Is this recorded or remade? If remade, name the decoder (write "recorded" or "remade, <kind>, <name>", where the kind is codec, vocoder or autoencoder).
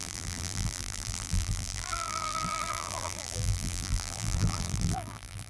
remade, vocoder, BigVGAN v2